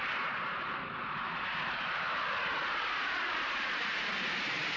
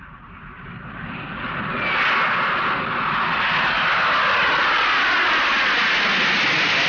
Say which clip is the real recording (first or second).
second